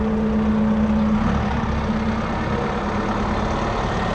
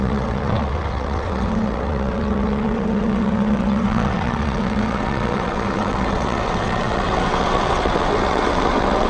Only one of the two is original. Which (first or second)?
first